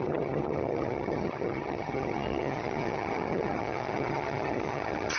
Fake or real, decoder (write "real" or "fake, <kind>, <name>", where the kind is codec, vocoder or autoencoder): fake, vocoder, HiFi-GAN